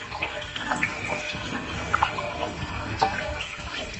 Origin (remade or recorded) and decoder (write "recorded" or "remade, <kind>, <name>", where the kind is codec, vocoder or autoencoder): remade, codec, SNAC